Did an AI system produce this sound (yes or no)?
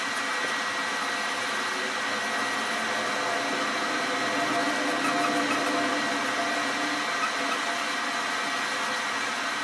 no